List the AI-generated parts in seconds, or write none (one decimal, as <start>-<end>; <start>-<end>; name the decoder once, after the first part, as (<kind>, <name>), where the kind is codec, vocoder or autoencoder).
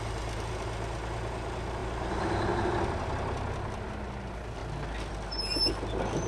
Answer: none